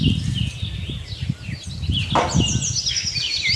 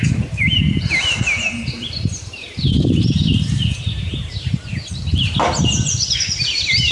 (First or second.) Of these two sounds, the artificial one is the second